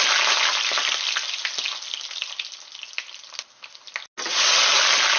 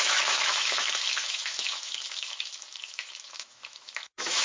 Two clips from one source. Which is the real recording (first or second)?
first